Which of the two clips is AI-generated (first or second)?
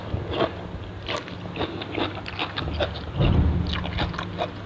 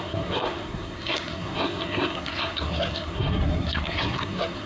second